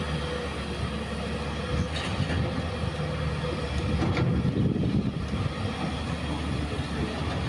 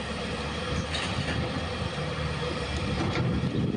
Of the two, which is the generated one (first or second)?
second